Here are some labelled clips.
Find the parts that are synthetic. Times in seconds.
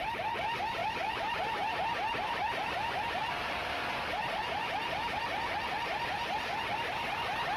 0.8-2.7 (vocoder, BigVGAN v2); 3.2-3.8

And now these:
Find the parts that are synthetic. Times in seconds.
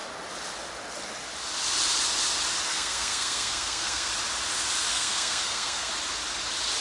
2.7-4.1 (codec, SNAC); 4.9-5.9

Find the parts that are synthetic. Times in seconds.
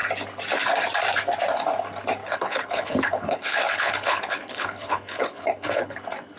2.2-6.0 (codec, HILCodec)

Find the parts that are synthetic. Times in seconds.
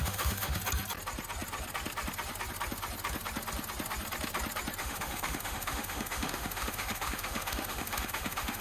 0.0-0.6 (autoencoder, DAC-VAE); 4.8-8.6